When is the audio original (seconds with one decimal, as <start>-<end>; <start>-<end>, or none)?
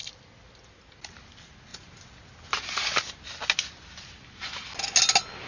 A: 0.0-5.5